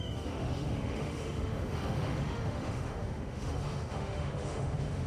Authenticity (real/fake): fake